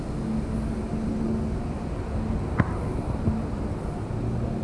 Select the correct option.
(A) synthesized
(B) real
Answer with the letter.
B